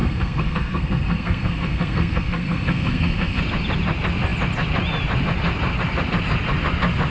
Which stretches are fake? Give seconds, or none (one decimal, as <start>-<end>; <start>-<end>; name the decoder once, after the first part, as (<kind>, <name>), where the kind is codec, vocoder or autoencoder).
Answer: 0.0-3.4 (codec, SNAC)